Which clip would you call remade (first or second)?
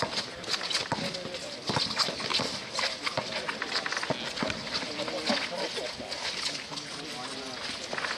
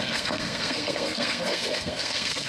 second